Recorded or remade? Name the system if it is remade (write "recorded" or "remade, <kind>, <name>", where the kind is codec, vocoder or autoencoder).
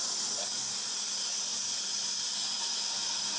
recorded